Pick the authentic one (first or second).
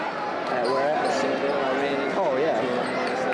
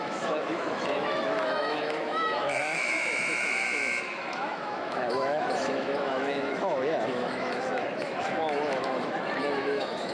first